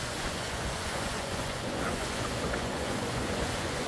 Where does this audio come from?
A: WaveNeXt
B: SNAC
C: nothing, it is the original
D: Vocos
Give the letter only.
D